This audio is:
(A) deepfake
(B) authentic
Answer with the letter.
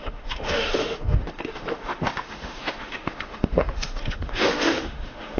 A